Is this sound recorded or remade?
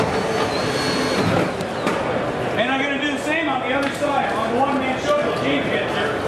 recorded